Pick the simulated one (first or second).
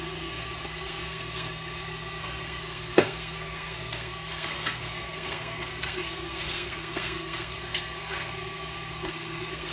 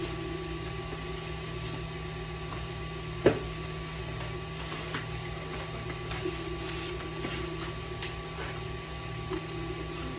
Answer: first